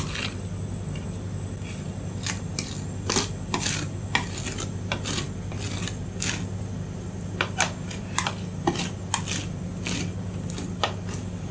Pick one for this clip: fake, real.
real